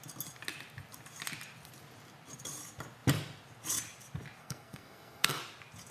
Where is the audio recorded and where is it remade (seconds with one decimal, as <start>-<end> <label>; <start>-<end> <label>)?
0.0-4.4 recorded; 4.4-5.4 remade; 5.4-5.9 recorded